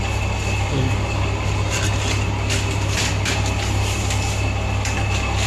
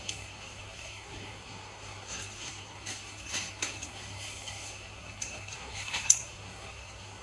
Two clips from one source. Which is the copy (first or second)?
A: second